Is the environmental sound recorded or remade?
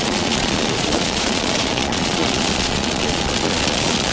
remade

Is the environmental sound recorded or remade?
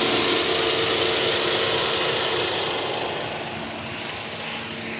recorded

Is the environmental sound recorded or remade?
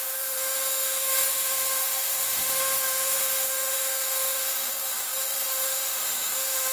remade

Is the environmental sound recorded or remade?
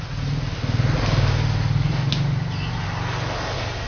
recorded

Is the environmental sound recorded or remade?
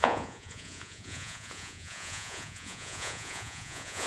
remade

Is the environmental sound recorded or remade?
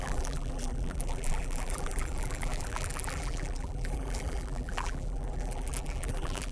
remade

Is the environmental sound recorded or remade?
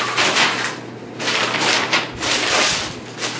recorded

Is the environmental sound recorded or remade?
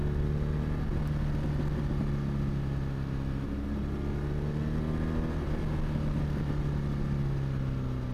recorded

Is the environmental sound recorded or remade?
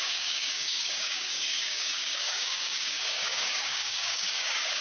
remade